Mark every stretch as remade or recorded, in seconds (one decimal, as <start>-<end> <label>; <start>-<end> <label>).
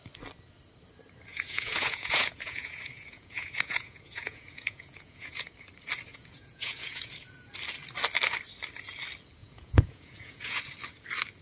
0.0-1.3 recorded; 1.3-5.5 remade; 5.5-6.1 recorded; 6.1-7.5 remade; 7.5-9.4 recorded; 9.4-10.6 remade; 10.6-11.4 recorded